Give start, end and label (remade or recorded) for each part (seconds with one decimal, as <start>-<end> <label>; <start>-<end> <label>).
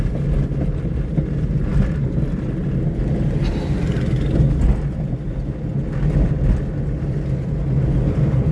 0.0-8.5 recorded